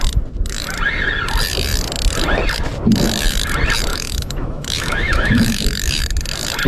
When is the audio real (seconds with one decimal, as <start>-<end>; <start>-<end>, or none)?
0.0-3.9; 6.0-6.7